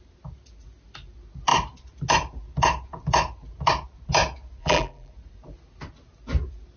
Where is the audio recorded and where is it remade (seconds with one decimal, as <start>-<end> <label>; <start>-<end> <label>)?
0.0-4.6 recorded; 4.6-5.1 remade; 5.1-6.8 recorded